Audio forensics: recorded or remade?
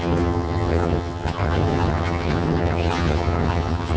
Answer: remade